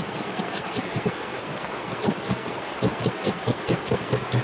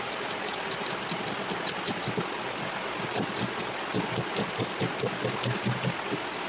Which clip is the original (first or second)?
second